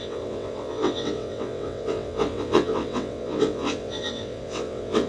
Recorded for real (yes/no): no